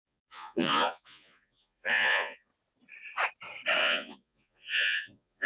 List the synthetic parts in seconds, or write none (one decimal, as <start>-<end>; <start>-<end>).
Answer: 0.0-2.5; 3.8-5.5